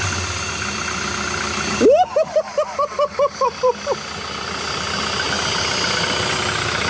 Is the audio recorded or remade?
recorded